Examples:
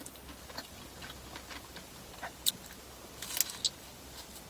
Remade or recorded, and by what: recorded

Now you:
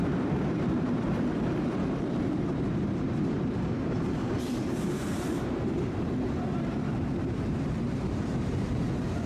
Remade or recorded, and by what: remade, vocoder, BigVGAN v2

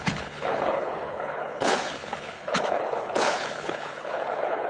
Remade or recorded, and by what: remade, codec, HILCodec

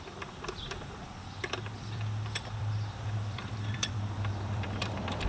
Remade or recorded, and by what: remade, vocoder, BigVGAN v2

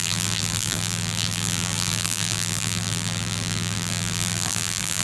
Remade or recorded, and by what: remade, vocoder, BigVGAN v2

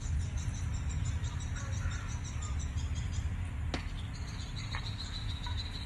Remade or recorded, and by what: recorded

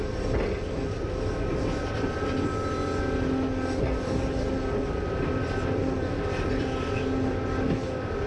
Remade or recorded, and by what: recorded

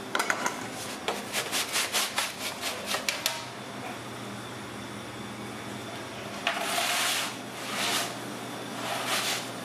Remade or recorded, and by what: recorded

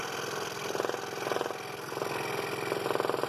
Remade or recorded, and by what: recorded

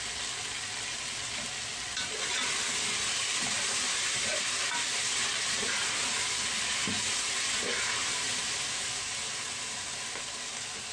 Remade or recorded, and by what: recorded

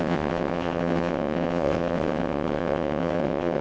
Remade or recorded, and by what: remade, vocoder, WaveNeXt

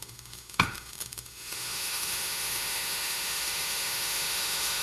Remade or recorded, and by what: remade, autoencoder, DAC-VAE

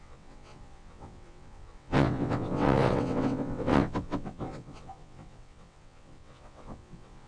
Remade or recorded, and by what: remade, vocoder, WaveNeXt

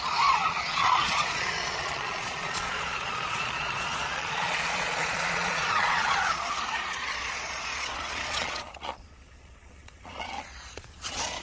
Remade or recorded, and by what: remade, vocoder, Vocos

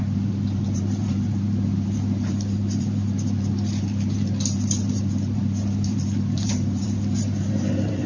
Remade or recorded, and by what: remade, vocoder, BigVGAN v2